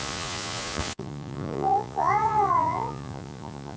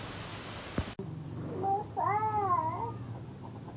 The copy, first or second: first